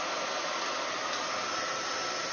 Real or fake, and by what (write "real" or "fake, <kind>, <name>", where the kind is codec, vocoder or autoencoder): real